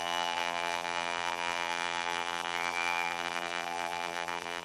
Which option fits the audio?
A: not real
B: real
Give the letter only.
A